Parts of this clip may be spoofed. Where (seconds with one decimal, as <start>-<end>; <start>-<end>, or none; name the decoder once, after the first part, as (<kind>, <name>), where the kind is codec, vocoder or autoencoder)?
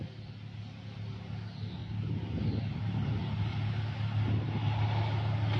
none